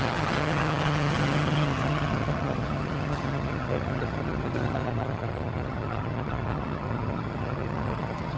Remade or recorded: remade